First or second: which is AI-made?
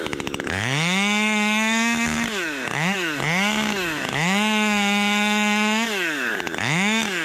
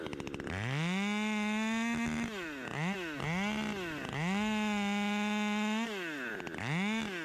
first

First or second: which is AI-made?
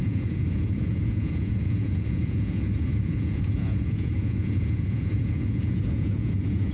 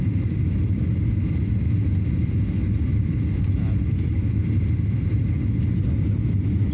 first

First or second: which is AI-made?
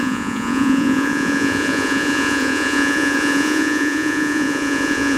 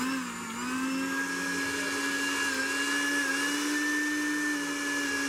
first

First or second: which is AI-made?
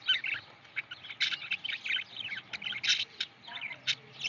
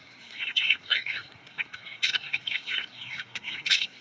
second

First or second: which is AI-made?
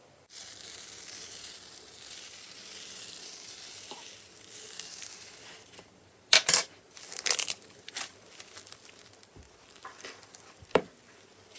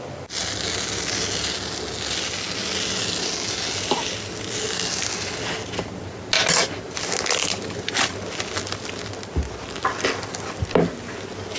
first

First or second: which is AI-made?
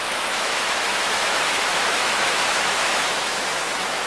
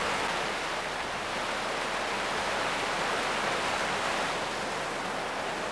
first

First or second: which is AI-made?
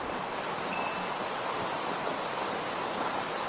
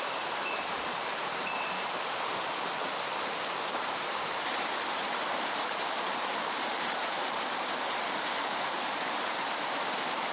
second